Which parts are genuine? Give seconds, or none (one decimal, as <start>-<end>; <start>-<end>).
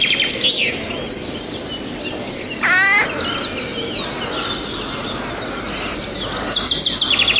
0.0-7.4